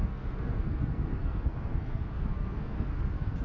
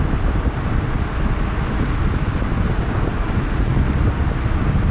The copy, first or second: first